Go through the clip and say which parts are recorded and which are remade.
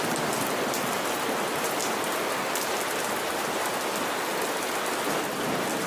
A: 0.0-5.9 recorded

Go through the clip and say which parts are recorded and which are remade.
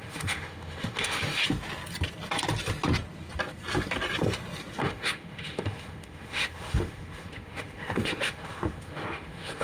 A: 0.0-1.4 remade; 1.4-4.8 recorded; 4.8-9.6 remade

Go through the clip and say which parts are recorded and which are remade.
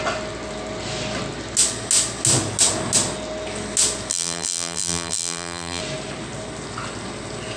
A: 0.0-4.1 recorded; 4.1-5.8 remade; 5.8-7.6 recorded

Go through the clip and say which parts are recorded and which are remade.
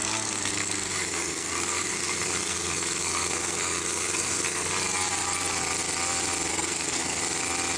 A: 0.0-4.7 remade; 4.7-6.5 recorded; 6.5-7.2 remade; 7.2-7.8 recorded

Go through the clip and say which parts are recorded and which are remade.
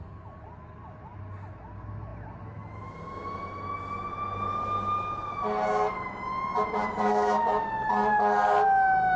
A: 0.0-9.2 recorded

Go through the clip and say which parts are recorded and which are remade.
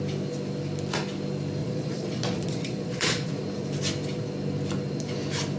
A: 0.0-1.6 recorded; 1.6-3.3 remade; 3.3-5.6 recorded